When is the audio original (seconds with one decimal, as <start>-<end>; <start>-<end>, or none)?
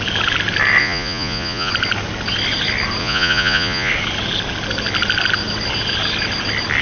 0.0-0.8; 1.7-3.0; 3.9-6.8